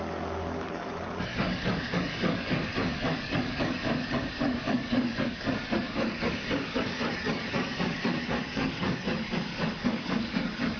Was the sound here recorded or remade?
remade